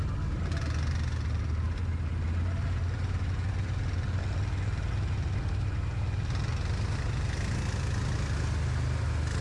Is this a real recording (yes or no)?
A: yes